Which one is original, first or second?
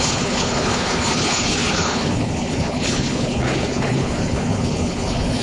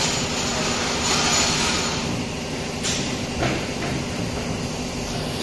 second